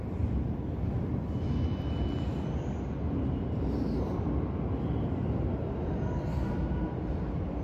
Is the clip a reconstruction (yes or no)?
no